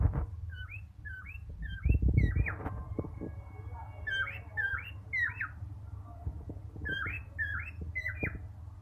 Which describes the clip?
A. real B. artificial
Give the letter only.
A